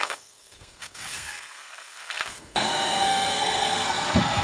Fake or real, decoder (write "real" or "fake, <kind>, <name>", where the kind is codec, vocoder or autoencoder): fake, codec, SNAC